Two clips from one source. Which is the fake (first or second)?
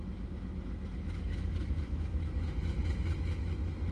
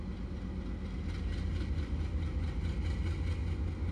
first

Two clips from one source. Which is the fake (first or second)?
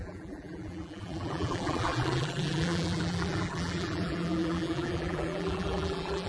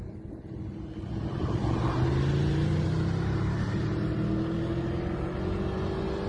first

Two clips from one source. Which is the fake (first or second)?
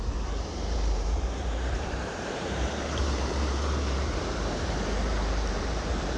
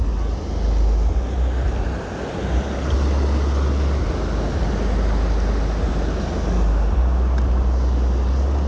first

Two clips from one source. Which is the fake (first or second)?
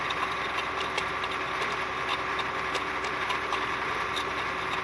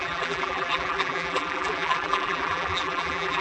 second